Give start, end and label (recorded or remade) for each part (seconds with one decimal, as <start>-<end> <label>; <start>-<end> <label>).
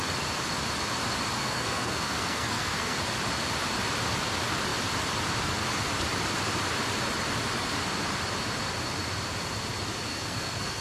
0.0-1.4 recorded; 1.4-3.0 remade; 3.0-10.1 recorded; 10.1-10.8 remade